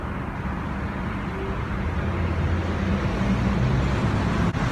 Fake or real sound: real